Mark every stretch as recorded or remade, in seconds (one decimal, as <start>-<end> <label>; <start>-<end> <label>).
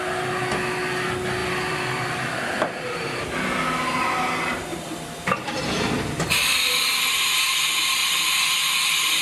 0.0-1.4 recorded; 1.4-4.0 remade; 4.0-4.7 recorded; 4.7-6.8 remade; 6.8-8.0 recorded; 8.0-8.7 remade; 8.7-9.2 recorded